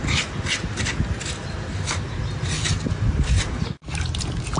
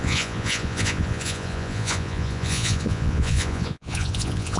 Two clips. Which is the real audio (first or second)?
first